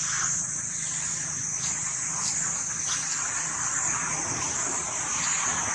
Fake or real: fake